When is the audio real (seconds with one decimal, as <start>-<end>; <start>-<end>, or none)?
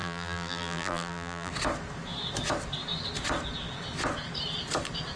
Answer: 1.5-5.2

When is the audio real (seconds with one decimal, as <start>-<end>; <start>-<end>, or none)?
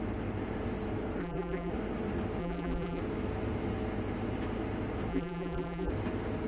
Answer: 0.0-1.2; 1.7-2.4; 3.0-5.1; 5.9-6.5